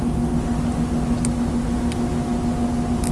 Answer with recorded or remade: recorded